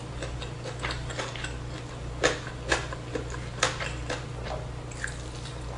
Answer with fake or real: real